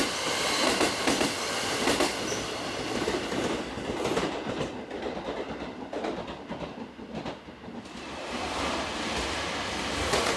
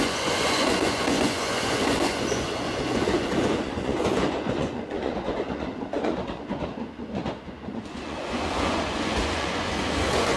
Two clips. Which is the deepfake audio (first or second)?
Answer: second